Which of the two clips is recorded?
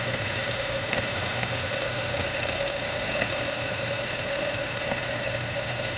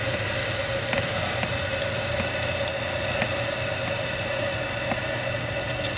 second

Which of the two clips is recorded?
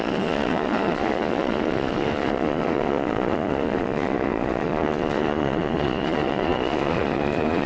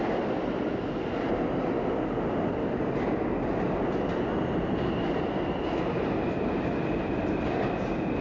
second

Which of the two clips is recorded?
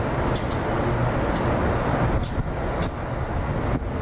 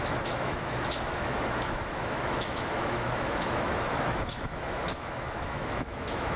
first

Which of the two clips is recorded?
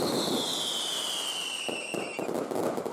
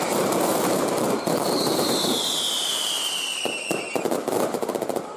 first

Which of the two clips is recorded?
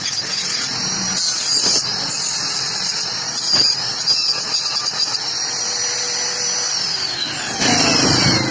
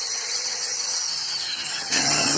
first